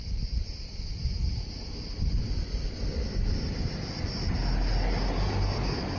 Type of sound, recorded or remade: recorded